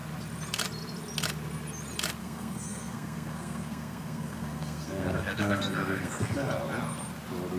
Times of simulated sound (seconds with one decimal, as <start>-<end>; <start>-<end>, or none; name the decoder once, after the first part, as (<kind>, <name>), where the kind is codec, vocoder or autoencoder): 2.2-6.5 (codec, SNAC)